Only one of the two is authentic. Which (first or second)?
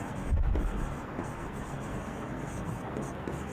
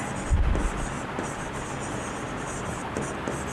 second